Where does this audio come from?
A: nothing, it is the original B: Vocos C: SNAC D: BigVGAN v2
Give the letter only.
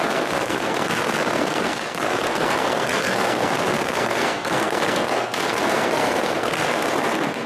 C